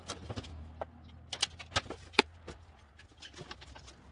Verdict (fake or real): real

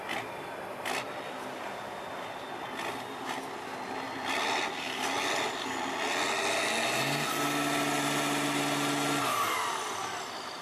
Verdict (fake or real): real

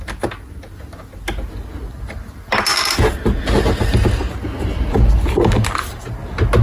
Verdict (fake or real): real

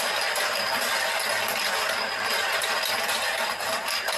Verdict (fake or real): real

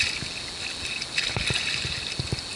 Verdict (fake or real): real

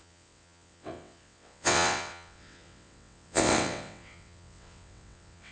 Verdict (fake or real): fake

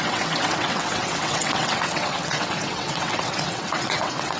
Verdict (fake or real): fake